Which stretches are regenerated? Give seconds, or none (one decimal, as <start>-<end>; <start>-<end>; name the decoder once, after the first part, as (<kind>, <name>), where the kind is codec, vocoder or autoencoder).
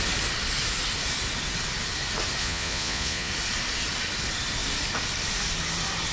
2.4-3.3 (vocoder, Vocos)